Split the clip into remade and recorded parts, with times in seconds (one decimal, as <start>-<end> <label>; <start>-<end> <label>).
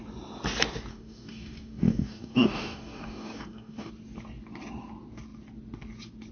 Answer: 0.0-0.9 recorded; 0.9-3.9 remade; 3.9-6.3 recorded